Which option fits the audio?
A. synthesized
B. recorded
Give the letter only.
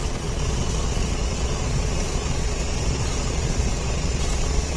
A